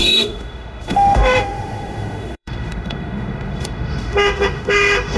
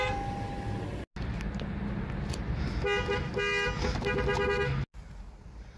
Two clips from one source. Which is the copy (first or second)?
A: first